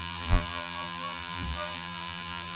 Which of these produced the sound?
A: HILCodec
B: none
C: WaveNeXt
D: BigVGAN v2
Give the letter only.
D